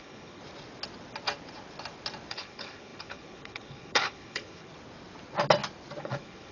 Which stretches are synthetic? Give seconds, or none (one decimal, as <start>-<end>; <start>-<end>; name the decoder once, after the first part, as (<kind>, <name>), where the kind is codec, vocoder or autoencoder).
0.0-0.4 (codec, HILCodec); 2.3-4.7; 6.0-6.5